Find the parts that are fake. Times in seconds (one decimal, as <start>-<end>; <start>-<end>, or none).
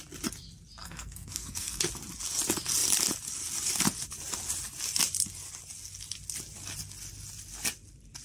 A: 0.8-1.8